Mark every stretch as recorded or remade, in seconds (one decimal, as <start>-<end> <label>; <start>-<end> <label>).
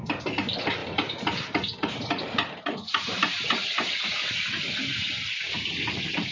0.0-0.8 recorded; 0.8-4.6 remade; 4.6-6.3 recorded